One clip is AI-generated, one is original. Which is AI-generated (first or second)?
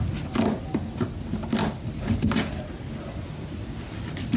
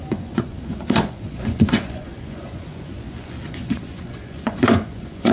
second